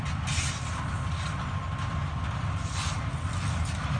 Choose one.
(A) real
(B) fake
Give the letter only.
A